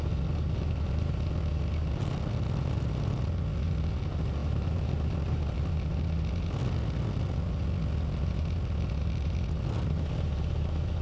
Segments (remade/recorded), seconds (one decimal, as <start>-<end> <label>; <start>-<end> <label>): 0.0-11.0 recorded

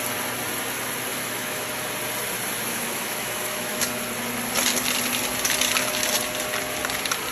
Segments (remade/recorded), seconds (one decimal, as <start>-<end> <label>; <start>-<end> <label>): 0.0-1.1 recorded; 1.1-1.8 remade; 1.8-2.7 recorded; 2.7-3.8 remade; 3.8-7.3 recorded

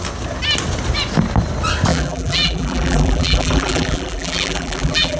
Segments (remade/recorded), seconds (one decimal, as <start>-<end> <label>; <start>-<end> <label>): 0.0-1.9 recorded; 1.9-5.2 remade

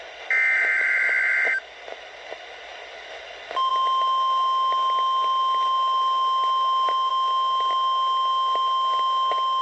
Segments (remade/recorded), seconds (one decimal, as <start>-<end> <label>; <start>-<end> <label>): 0.0-9.6 recorded